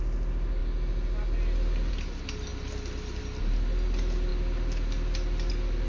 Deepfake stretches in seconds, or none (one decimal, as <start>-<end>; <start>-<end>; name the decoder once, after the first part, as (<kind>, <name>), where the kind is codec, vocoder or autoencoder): none